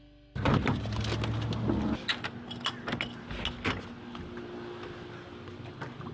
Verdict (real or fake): real